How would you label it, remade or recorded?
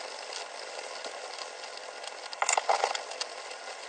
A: recorded